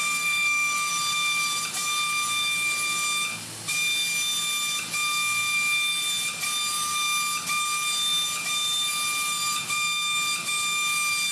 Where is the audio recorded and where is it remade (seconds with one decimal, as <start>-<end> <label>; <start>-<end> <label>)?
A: 0.0-0.9 remade; 0.9-11.3 recorded